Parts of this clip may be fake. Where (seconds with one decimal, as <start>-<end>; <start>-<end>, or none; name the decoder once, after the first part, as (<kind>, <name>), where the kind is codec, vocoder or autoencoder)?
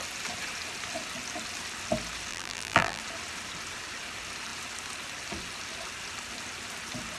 2.3-3.0 (vocoder, BigVGAN v2)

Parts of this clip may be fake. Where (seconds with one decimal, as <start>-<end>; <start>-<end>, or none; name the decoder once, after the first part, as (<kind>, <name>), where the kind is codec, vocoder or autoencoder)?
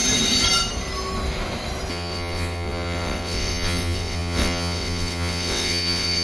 1.9-6.2 (vocoder, WaveNeXt)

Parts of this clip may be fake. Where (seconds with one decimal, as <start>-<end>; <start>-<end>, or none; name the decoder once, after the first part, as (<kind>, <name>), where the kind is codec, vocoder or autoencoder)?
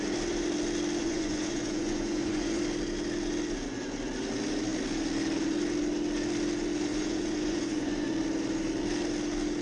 1.0-2.6 (vocoder, Vocos); 6.9-8.1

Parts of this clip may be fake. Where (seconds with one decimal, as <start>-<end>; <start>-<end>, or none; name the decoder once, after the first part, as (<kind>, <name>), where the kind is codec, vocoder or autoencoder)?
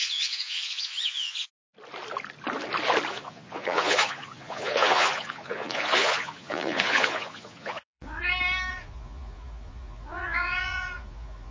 0.0-1.5 (vocoder, Vocos); 3.1-8.2; 8.7-11.5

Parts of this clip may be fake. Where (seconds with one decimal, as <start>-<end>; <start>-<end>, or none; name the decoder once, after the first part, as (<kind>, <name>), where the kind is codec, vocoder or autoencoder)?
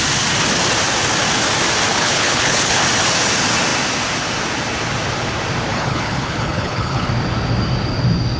1.9-2.8 (codec, HILCodec); 5.7-7.1